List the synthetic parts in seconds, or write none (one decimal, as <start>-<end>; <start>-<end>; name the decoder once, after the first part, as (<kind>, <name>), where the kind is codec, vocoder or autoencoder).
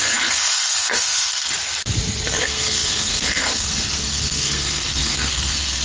0.0-1.5 (codec, SNAC); 2.4-5.8